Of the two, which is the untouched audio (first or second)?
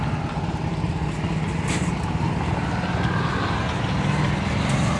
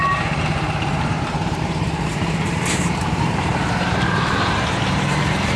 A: first